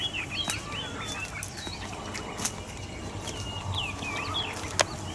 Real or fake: real